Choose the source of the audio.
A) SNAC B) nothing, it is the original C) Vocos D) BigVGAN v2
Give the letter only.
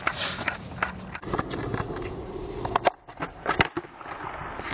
B